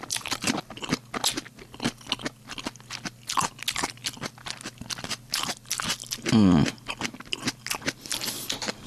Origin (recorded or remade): recorded